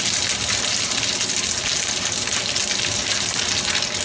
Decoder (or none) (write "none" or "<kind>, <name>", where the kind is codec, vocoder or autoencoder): none